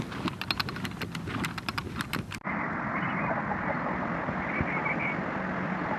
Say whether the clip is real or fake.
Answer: real